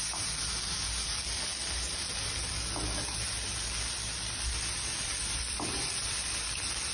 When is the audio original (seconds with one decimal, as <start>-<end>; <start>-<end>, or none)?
0.0-5.1; 6.3-6.9